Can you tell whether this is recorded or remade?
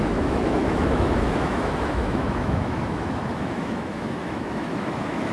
remade